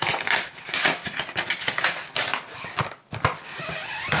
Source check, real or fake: real